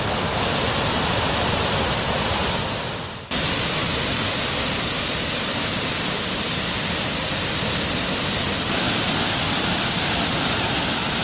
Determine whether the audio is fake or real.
real